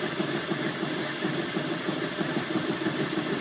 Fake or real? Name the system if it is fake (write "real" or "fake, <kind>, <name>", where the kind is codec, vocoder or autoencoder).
real